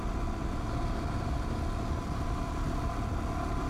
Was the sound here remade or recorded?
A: recorded